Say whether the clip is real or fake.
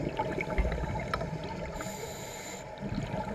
real